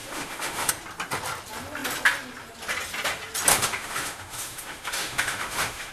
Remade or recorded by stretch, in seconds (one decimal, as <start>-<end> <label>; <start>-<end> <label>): 0.0-0.7 remade; 0.7-3.5 recorded; 3.5-5.9 remade